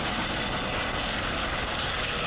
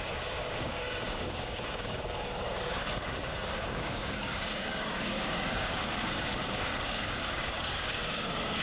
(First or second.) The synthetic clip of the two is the second